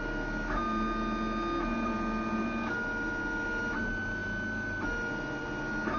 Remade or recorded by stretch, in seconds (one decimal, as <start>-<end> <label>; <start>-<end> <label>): 0.0-6.0 recorded